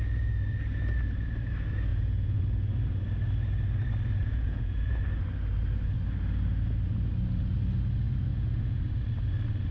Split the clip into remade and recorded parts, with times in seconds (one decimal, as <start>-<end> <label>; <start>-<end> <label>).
0.0-1.9 recorded; 1.9-2.4 remade; 2.4-4.2 recorded; 4.2-5.0 remade; 5.0-8.3 recorded; 8.3-8.8 remade; 8.8-9.7 recorded